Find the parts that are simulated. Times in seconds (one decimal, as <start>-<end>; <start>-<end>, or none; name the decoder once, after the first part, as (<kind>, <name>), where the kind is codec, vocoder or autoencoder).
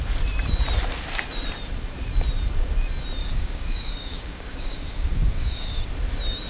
3.2-5.8 (codec, DAC)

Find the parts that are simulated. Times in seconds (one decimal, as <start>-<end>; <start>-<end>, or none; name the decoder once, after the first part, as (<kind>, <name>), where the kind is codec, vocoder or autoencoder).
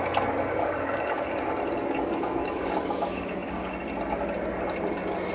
0.6-1.4 (codec, DAC); 1.8-3.7